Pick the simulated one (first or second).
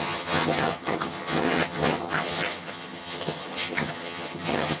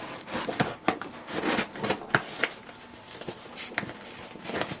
first